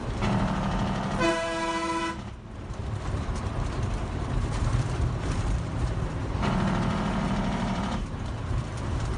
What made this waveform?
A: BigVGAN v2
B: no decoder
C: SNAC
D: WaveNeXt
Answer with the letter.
A